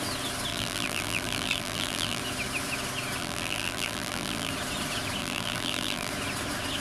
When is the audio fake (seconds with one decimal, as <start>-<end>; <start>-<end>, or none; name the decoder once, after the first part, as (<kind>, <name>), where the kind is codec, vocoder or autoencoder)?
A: 0.5-2.2 (vocoder, BigVGAN v2); 3.2-4.5; 5.2-6.1